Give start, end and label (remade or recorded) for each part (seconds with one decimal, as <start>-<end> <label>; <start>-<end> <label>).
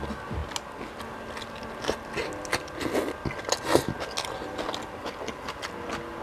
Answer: 0.0-6.2 recorded